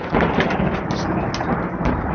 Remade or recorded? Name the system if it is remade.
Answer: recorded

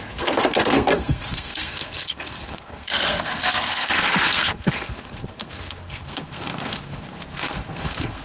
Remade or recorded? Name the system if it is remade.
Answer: remade, codec, SNAC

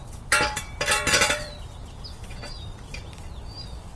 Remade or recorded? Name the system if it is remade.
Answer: remade, vocoder, BigVGAN v2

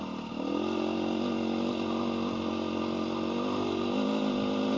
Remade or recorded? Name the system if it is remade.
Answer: recorded